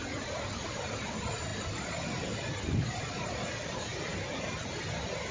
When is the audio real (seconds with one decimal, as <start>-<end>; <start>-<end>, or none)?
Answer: 0.0-5.3